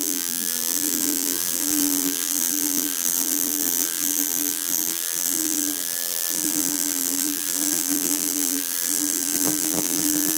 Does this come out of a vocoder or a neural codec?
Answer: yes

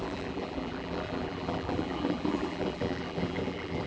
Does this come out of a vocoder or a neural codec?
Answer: yes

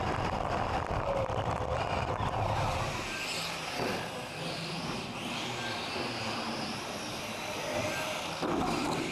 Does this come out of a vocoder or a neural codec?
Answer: no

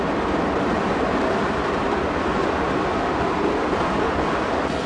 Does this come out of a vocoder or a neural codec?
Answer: yes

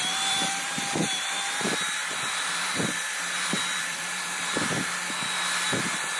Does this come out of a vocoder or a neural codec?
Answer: yes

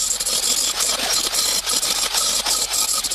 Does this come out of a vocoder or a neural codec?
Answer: no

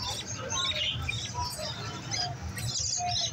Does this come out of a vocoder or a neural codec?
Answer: no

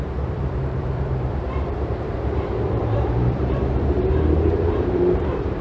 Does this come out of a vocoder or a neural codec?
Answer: yes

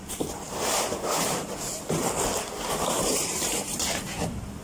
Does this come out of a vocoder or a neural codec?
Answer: yes